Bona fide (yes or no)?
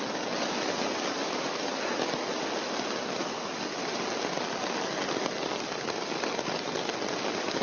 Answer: yes